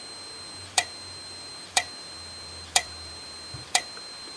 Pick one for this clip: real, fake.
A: fake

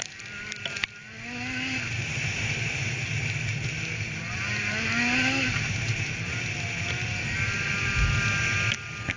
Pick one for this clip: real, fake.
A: real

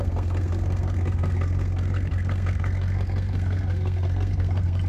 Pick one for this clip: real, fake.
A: fake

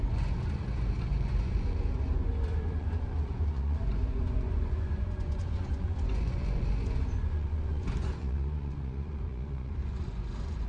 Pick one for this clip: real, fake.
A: fake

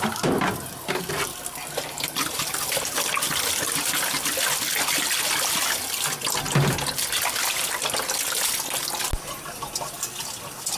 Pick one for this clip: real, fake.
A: real